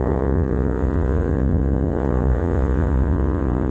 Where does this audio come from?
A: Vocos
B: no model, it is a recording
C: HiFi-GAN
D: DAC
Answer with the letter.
A